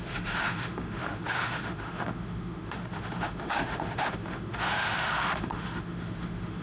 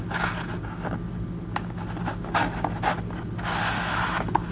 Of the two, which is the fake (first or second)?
first